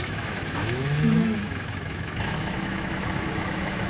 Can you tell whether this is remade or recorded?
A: remade